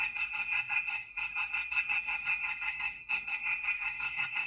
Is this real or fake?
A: fake